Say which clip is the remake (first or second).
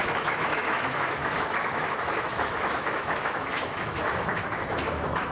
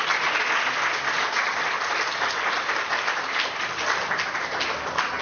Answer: first